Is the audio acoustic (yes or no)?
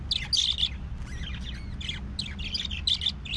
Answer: yes